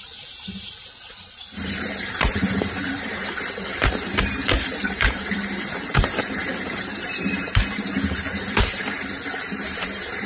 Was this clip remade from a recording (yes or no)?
yes